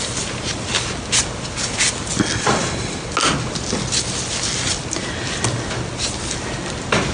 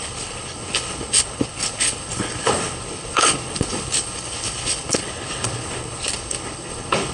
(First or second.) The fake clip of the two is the second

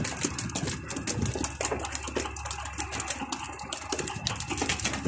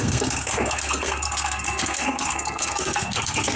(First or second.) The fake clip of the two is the second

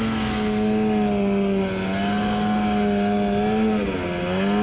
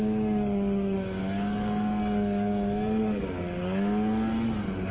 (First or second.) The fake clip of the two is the second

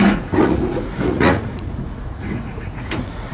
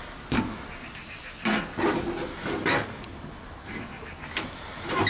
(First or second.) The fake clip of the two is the first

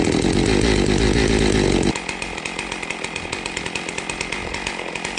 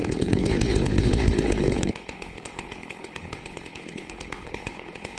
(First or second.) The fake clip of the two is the second